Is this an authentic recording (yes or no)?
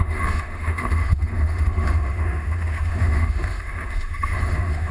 no